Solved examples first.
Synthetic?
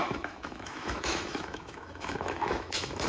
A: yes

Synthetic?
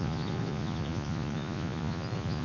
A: yes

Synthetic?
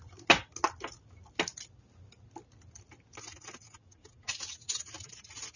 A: no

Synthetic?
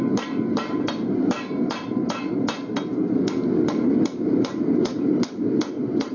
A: yes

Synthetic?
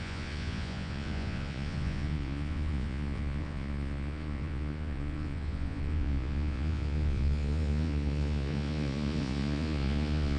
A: yes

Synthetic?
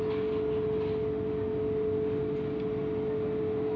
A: no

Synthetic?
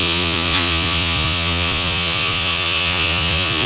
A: yes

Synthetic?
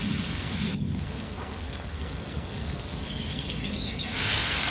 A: yes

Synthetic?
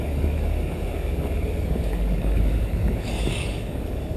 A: yes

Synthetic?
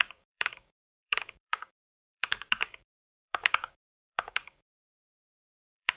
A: yes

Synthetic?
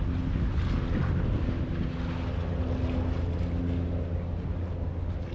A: no